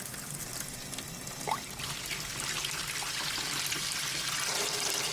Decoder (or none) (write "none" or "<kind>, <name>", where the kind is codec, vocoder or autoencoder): none